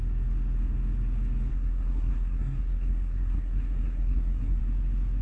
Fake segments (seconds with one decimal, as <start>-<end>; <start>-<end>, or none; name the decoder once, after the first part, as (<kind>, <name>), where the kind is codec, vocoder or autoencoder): 1.5-4.6 (codec, SNAC)